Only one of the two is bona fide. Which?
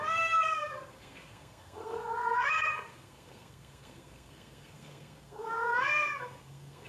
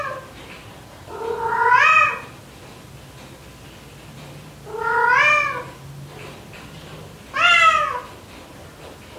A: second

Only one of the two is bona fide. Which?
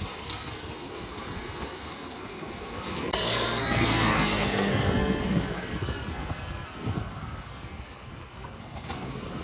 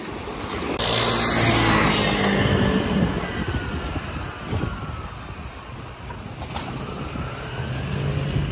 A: second